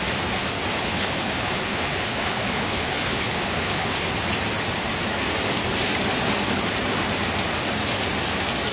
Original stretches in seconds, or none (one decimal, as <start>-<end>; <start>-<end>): 0.0-0.8; 4.1-8.7